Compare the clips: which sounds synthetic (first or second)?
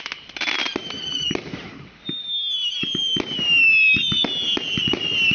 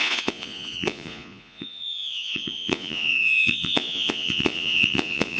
second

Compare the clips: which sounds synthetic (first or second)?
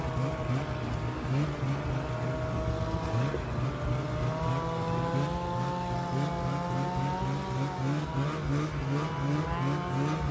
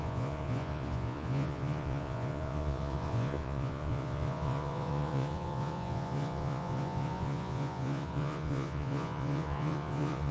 second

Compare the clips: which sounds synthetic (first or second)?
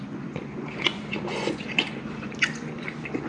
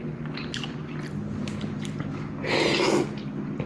first